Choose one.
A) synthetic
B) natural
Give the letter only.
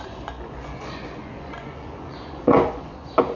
A